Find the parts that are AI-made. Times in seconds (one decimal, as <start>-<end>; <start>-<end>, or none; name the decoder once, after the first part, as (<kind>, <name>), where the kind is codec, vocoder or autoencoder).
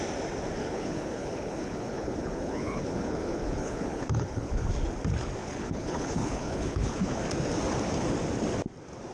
0.6-4.7 (codec, HILCodec); 5.4-7.2